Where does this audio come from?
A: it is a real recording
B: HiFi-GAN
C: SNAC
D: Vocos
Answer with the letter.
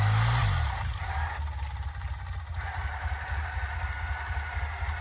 A